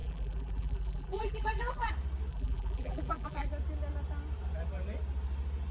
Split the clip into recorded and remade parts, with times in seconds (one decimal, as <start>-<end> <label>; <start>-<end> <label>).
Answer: 0.0-1.9 remade; 1.9-2.3 recorded; 2.3-3.5 remade; 3.5-5.7 recorded